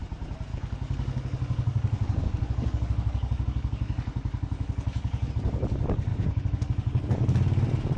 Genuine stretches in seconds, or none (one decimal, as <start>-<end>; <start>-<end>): 0.0-0.5; 5.3-6.1; 7.2-8.0